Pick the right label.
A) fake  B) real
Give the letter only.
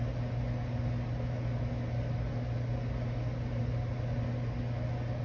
B